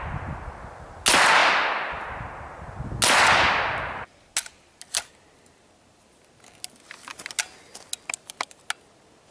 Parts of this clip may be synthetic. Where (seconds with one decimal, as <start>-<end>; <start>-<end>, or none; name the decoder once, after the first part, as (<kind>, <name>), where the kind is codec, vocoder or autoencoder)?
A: none